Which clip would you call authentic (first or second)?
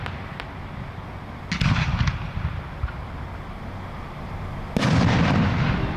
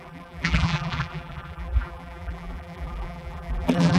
first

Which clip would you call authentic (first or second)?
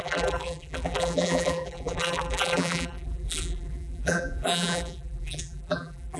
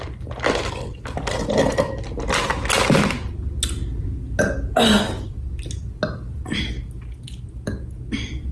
second